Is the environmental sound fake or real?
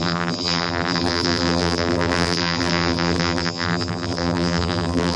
fake